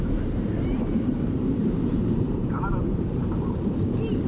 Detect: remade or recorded remade